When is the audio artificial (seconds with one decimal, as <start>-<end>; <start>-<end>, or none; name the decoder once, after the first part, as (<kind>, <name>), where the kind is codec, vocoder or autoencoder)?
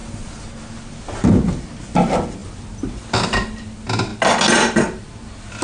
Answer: none